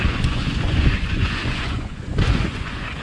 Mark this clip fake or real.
fake